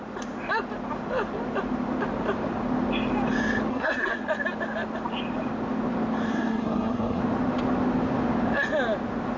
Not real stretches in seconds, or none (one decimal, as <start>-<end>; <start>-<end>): 3.7-4.2; 6.3-7.2